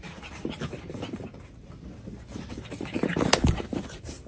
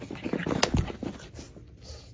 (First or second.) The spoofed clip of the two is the first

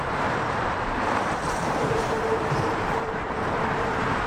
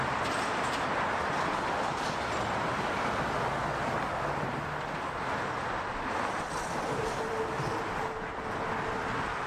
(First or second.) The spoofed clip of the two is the first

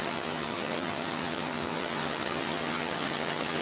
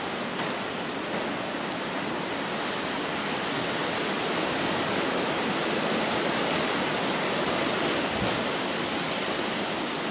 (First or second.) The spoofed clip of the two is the first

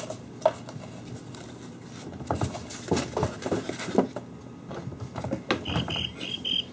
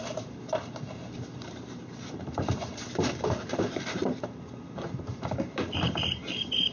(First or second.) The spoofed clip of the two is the second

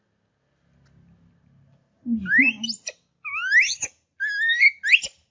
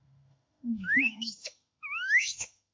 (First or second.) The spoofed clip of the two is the second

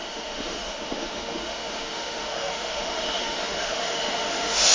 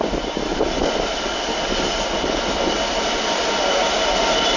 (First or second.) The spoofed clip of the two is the first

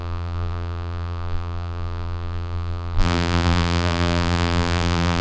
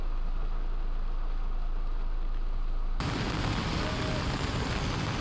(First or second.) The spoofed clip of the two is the first